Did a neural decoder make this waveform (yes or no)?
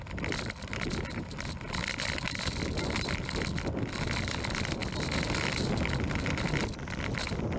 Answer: no